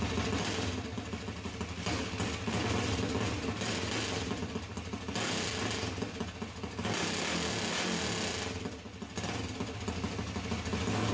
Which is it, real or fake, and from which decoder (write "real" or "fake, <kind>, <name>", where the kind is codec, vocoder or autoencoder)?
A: real